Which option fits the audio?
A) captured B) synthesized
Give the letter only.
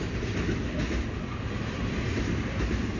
A